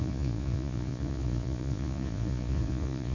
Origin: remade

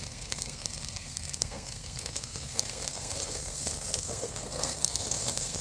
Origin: remade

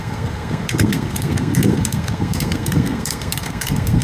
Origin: remade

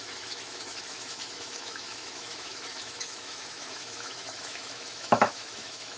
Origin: remade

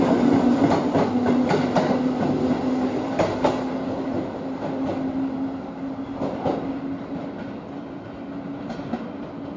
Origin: recorded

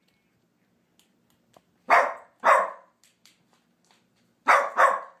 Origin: recorded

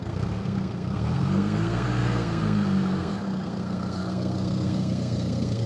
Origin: remade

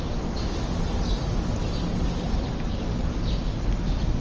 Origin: recorded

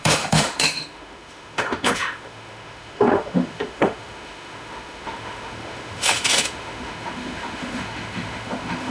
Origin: remade